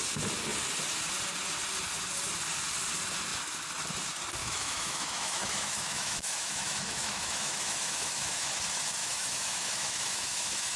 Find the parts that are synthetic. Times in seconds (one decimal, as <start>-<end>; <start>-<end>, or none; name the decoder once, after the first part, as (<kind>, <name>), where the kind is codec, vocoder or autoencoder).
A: 4.4-8.5 (autoencoder, DAC-VAE); 9.0-10.8